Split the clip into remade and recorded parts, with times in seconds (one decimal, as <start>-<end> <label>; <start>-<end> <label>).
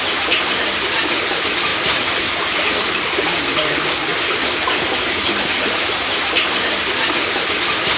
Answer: 0.0-1.7 recorded; 1.7-2.2 remade; 2.2-4.1 recorded; 4.1-5.6 remade; 5.6-8.0 recorded